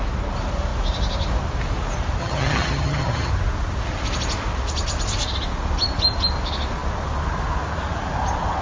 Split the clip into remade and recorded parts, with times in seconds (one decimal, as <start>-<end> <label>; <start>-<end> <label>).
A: 0.0-2.2 recorded; 2.2-3.3 remade; 3.3-8.6 recorded